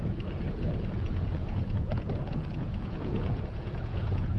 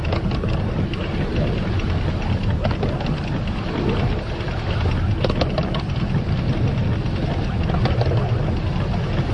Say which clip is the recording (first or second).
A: second